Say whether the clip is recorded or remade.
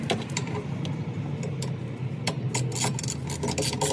recorded